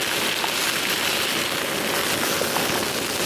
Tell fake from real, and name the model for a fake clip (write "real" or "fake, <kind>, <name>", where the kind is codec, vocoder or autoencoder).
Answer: real